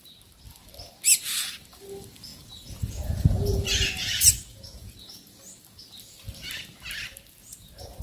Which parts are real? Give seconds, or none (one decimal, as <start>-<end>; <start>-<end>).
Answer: 0.0-2.3; 5.4-7.4